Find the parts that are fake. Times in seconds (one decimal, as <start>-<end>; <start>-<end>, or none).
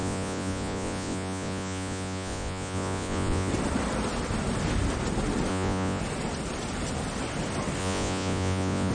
0.0-3.5; 5.5-6.0; 7.8-8.9